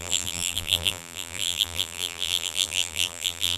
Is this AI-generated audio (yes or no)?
yes